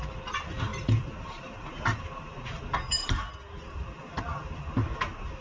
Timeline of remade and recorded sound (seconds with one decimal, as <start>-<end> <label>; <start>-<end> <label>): 0.0-0.7 recorded; 0.7-3.3 remade; 3.3-5.4 recorded